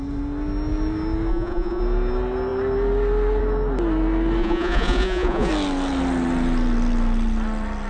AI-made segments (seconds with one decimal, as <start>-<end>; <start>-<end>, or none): 1.3-1.8; 4.4-5.5